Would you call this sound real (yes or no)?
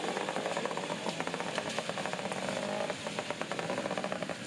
yes